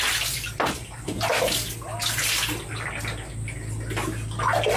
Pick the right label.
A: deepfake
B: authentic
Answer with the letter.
B